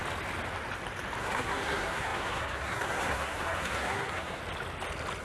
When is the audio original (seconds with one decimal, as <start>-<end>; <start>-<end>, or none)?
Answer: 0.0-1.2; 4.4-5.2